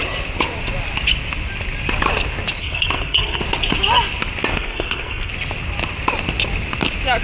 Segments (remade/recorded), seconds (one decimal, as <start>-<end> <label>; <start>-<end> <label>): 0.0-2.6 recorded; 2.6-3.4 remade; 3.4-4.5 recorded; 4.5-5.3 remade; 5.3-7.2 recorded